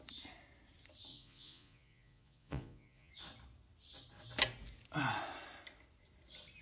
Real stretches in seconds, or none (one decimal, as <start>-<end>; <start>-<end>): 0.0-1.1; 3.1-6.6